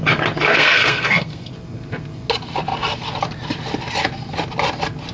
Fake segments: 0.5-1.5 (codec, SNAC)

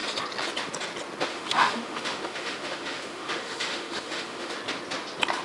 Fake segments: 1.3-4.5 (autoencoder, DAC-VAE)